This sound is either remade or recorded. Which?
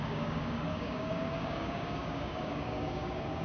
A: remade